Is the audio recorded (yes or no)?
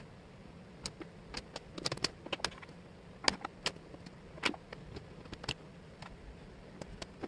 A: yes